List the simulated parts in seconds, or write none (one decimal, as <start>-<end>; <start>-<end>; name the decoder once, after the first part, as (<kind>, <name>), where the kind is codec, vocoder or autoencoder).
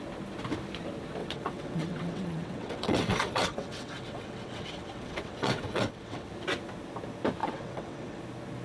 1.2-6.3 (vocoder, WaveNeXt); 7.4-8.2